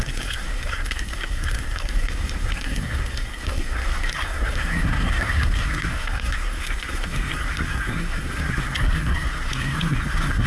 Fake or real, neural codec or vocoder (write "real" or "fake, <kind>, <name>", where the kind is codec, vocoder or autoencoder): fake, codec, SNAC